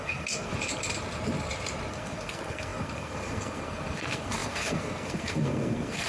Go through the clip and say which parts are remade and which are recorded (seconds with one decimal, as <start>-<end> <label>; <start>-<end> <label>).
0.0-0.5 remade; 0.5-1.9 recorded; 1.9-6.1 remade